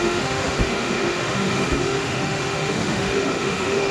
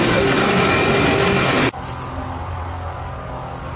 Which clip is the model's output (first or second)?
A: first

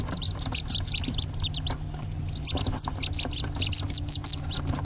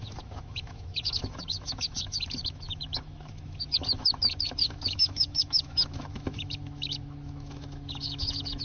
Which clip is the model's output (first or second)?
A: second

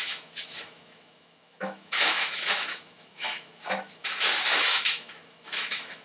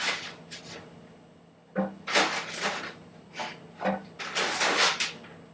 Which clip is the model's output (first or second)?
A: first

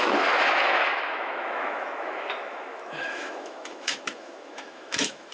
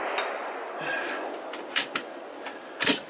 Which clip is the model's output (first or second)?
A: first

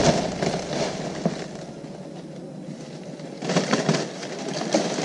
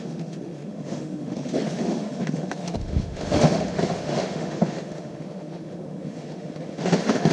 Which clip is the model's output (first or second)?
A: second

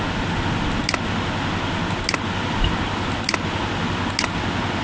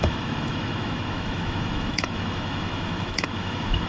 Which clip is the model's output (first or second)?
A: second